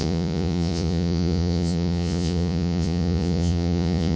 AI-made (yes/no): yes